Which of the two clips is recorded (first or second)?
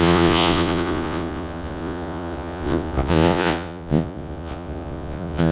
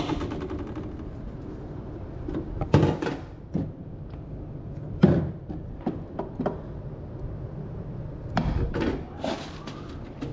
second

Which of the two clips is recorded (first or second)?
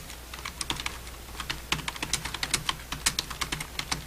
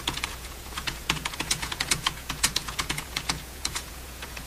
first